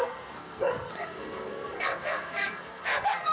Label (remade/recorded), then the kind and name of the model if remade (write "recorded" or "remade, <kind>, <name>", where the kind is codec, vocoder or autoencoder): remade, codec, SNAC